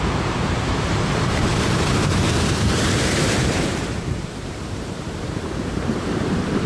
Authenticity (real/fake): fake